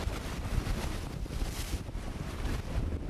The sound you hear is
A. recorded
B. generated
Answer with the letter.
B